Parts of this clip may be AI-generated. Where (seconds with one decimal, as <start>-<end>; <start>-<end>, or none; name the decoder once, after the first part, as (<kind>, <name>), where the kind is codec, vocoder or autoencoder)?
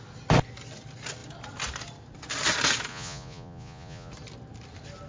2.9-4.1 (vocoder, Vocos)